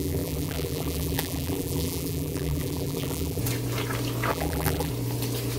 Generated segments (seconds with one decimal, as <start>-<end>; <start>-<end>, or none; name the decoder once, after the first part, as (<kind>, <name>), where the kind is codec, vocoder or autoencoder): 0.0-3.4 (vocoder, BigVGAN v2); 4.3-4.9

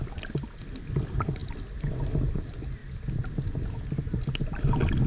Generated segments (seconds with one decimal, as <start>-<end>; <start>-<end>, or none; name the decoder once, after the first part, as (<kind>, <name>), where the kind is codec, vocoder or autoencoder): none

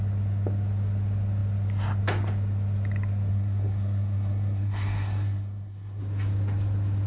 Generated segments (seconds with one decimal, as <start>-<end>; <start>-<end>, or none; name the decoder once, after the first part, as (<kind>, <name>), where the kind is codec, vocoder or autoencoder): 3.3-6.0 (codec, SNAC)

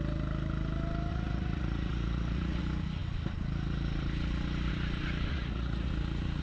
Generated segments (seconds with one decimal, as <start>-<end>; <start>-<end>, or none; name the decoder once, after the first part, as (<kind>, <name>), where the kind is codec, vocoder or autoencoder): 1.1-2.6 (vocoder, Vocos); 5.3-5.9